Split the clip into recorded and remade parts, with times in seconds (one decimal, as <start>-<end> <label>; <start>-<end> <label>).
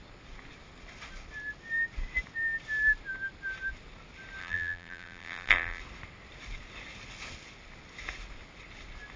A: 0.0-4.4 recorded; 4.4-5.8 remade; 5.8-9.2 recorded